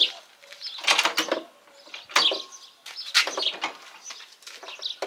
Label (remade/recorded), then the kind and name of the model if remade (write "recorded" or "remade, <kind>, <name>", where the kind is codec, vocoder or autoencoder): recorded